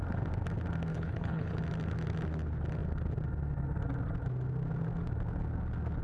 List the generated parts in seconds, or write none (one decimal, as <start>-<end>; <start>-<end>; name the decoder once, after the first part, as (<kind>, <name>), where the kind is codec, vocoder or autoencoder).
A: 0.9-1.6 (codec, HILCodec)

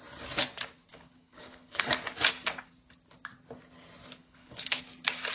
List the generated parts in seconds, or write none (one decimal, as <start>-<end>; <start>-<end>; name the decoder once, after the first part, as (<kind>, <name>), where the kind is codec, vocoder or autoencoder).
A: 0.9-1.9 (codec, HILCodec); 4.2-4.8